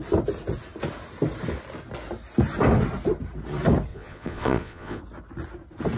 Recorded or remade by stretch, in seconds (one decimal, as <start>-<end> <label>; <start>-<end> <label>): 0.0-3.9 recorded; 3.9-5.0 remade; 5.0-6.0 recorded